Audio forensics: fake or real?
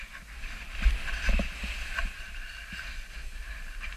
real